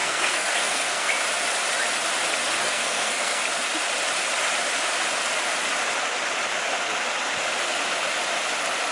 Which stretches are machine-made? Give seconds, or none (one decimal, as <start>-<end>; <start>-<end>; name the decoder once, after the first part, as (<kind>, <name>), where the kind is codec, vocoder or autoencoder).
0.0-1.1 (codec, SNAC); 2.6-3.4